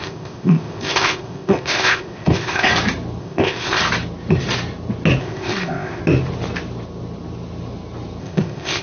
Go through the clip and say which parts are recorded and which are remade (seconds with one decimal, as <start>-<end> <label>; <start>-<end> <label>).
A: 0.0-2.7 remade; 2.7-3.2 recorded; 3.2-3.8 remade; 3.8-5.2 recorded; 5.2-6.0 remade; 6.0-8.2 recorded; 8.2-8.8 remade